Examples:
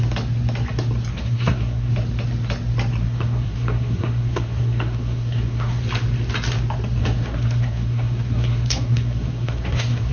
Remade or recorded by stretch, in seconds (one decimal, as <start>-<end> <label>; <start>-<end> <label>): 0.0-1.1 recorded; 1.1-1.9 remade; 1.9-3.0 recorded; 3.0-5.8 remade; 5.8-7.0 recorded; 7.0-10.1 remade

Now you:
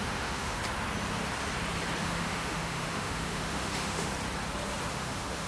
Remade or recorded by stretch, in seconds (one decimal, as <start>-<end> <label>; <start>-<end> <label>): 0.0-0.6 remade; 0.6-2.0 recorded; 2.0-4.1 remade; 4.1-4.9 recorded; 4.9-5.5 remade

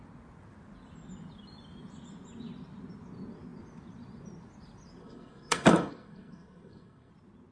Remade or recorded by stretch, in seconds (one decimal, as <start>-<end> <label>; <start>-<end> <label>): 0.0-5.0 recorded; 5.0-7.1 remade; 7.1-7.5 recorded

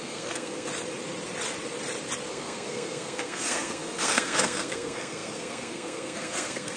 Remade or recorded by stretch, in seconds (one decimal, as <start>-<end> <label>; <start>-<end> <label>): 0.0-0.7 remade; 0.7-2.3 recorded; 2.3-6.8 remade

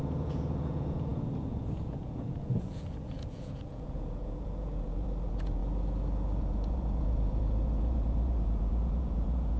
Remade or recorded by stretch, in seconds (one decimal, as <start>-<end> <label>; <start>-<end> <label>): 0.0-5.6 remade; 5.6-6.4 recorded; 6.4-9.6 remade

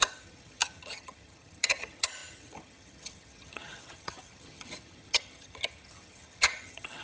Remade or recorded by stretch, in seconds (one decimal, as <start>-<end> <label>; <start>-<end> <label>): 0.0-7.0 remade